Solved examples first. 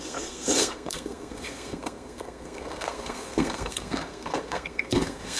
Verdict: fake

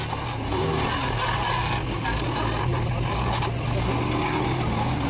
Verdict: real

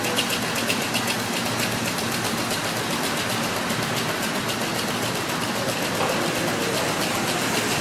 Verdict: real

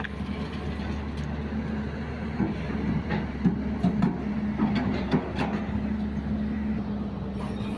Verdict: real